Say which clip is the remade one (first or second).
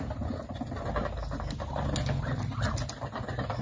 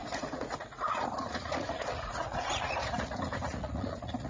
second